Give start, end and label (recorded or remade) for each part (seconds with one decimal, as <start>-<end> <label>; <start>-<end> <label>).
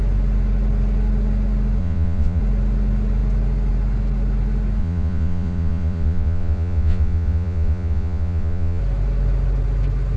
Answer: 0.0-1.8 recorded; 1.8-2.4 remade; 2.4-4.8 recorded; 4.8-8.8 remade; 8.8-10.2 recorded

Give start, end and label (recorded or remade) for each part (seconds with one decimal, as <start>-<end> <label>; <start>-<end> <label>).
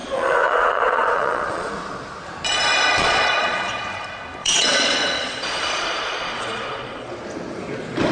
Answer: 0.0-1.7 remade; 1.7-3.0 recorded; 3.0-3.7 remade; 3.7-4.4 recorded; 4.4-7.1 remade; 7.1-8.1 recorded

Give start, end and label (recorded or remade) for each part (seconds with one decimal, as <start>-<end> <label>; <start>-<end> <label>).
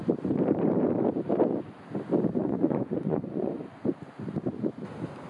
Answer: 0.0-2.4 recorded; 2.4-3.6 remade; 3.6-5.3 recorded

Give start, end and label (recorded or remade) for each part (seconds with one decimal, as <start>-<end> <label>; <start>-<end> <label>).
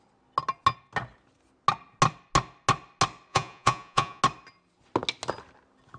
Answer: 0.0-3.3 recorded; 3.3-4.2 remade; 4.2-6.0 recorded